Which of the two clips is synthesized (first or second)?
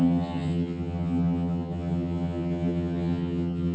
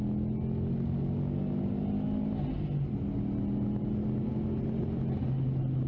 first